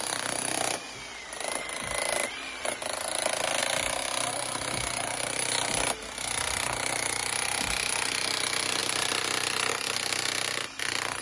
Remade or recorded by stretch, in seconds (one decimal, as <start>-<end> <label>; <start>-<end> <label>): 0.0-11.2 recorded